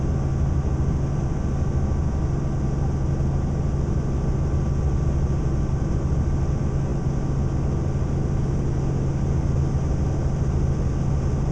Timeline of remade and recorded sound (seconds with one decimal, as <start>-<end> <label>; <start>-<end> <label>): 0.0-11.5 recorded